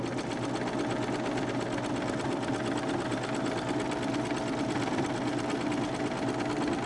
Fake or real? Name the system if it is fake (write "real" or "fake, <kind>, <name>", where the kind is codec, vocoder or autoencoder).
real